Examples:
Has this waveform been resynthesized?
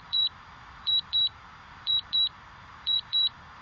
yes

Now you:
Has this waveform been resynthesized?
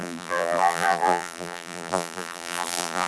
yes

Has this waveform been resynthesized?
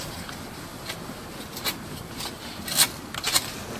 no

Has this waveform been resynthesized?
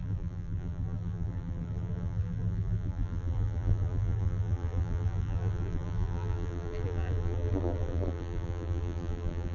yes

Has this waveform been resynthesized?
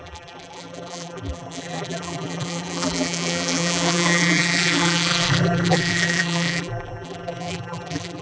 yes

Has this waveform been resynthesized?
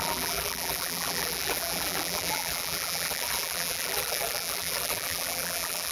yes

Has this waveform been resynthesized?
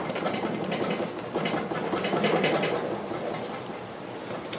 yes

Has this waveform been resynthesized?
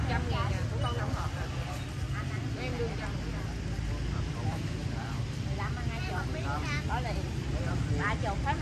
no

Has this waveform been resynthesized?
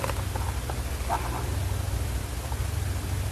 no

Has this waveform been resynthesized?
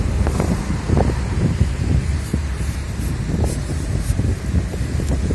yes